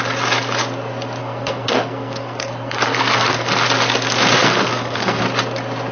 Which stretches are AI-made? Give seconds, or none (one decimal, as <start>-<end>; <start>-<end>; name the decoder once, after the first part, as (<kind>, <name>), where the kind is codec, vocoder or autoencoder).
1.2-3.5 (codec, SNAC); 4.4-5.2